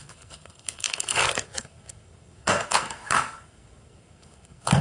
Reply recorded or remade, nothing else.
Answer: remade